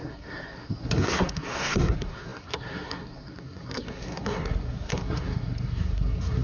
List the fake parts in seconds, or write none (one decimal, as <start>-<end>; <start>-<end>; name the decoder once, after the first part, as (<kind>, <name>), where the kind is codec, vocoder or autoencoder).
0.0-6.4 (codec, SNAC)